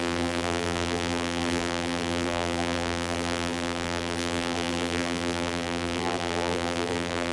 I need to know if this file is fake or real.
fake